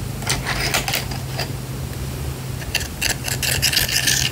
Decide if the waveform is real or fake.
real